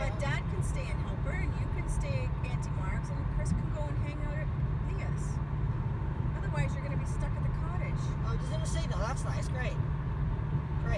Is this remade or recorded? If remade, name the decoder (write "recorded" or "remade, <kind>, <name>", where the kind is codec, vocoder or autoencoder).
recorded